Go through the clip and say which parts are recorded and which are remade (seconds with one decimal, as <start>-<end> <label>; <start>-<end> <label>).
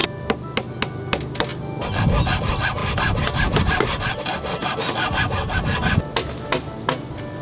0.0-7.4 recorded